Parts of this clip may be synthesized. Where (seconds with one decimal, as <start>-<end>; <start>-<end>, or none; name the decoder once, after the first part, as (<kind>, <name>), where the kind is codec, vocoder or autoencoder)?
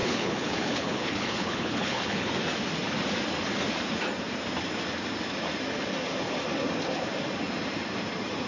0.0-2.3 (codec, HILCodec)